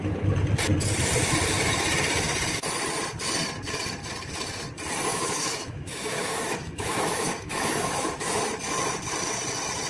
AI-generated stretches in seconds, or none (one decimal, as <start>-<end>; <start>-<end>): 5.1-8.4